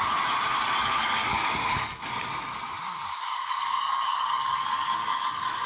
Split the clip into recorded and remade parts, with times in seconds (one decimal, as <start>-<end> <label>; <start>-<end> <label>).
0.0-0.8 recorded; 0.8-1.7 remade; 1.7-2.9 recorded; 2.9-5.7 remade